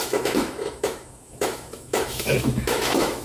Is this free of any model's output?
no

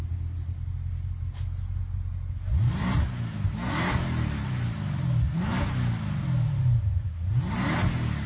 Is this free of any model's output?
yes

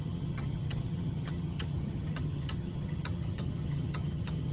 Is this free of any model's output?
no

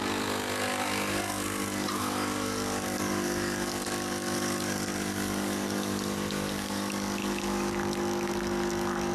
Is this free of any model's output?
no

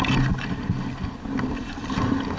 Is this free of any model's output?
yes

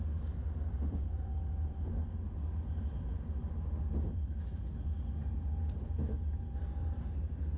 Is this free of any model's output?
no